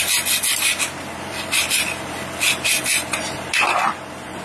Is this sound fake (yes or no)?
yes